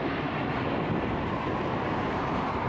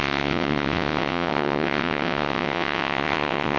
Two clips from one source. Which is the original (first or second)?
first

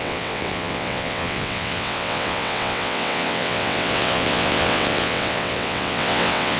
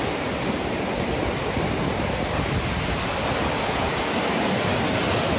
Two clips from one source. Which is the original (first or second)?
second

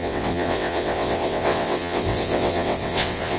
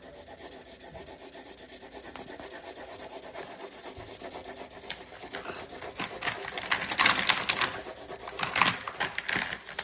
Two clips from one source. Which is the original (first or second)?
second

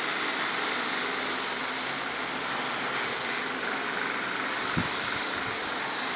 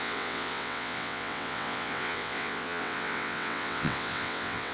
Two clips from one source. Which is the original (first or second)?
first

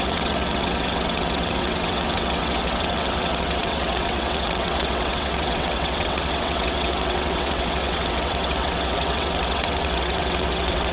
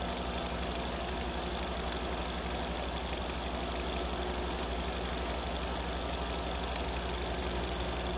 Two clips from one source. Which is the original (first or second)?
second